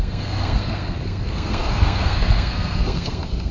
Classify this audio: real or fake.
fake